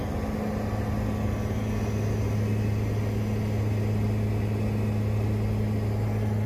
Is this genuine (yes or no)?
yes